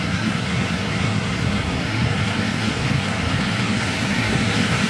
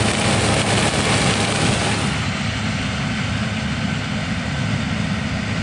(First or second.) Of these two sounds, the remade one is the first